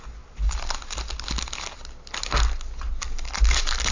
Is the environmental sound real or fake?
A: real